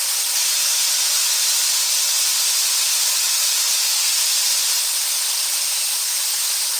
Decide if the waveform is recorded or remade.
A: recorded